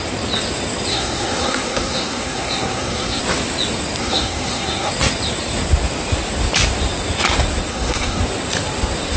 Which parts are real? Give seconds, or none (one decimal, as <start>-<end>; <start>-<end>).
0.0-0.9; 3.2-4.0; 4.9-7.7; 8.2-9.2